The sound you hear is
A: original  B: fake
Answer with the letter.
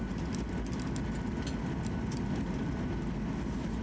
A